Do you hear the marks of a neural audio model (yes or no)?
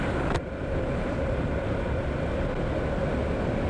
no